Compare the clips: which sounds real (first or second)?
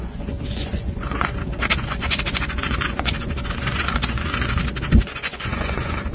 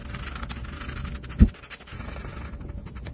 second